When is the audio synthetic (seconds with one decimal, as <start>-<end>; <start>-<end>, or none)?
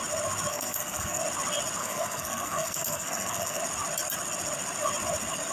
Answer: 0.5-1.2; 1.8-3.6